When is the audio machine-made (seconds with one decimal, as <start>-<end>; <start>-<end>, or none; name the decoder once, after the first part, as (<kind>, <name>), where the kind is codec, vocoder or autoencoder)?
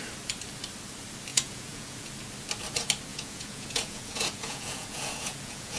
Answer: 1.3-2.1 (vocoder, Vocos); 3.1-5.8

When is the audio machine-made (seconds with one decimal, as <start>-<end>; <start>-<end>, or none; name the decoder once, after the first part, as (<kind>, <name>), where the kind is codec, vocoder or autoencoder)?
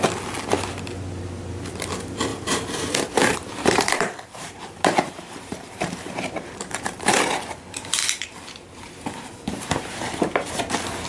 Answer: 2.3-7.1 (vocoder, BigVGAN v2); 8.0-10.6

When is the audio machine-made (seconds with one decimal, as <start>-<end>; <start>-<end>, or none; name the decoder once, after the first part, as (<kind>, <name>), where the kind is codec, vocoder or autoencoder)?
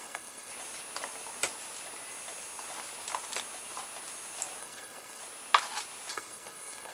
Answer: 0.0-0.5 (codec, SNAC); 4.6-5.2; 6.1-6.9